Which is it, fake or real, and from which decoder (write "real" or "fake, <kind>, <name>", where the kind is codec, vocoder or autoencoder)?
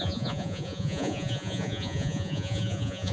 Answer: fake, vocoder, Vocos